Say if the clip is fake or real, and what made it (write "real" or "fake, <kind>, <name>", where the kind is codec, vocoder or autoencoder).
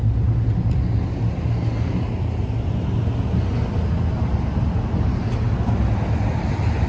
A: real